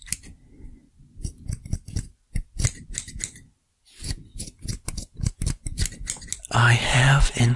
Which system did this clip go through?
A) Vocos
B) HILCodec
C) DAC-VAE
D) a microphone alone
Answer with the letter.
D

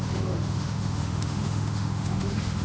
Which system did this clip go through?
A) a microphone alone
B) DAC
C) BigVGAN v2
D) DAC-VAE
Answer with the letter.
D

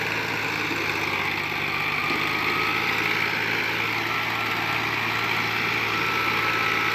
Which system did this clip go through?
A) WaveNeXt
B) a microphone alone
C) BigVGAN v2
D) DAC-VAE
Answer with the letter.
B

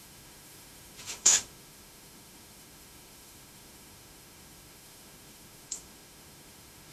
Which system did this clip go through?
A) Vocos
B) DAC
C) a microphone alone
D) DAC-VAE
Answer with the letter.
D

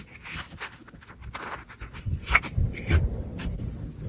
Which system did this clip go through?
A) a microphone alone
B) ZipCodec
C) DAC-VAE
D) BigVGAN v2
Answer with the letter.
A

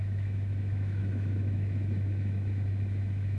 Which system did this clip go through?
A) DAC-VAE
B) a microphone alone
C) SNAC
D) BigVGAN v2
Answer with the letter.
A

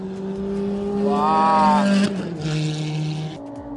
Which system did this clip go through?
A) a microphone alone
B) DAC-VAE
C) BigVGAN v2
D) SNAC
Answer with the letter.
A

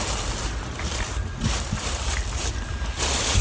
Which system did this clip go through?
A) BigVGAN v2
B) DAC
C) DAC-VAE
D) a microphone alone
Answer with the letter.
D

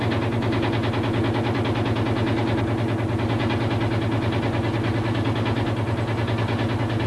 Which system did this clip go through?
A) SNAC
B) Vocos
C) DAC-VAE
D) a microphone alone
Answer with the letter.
D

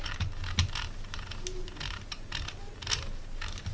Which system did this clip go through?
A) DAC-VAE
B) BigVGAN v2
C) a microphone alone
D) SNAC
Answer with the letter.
C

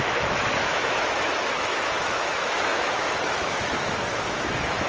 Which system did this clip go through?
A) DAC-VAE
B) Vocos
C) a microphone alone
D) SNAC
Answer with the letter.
A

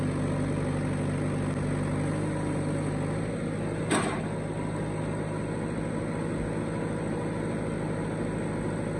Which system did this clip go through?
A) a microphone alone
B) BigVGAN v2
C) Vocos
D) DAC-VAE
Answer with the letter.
A